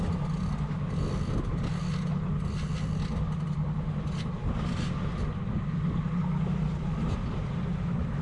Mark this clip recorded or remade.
recorded